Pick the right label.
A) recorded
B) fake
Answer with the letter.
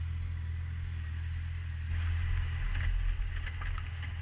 A